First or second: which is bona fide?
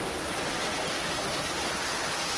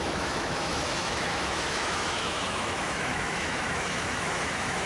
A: first